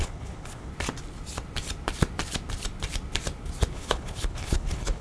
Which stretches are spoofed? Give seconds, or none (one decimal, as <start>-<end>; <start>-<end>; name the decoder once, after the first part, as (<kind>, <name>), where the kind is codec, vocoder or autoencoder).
0.0-0.7 (codec, HILCodec); 3.7-5.0